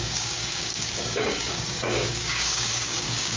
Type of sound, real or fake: fake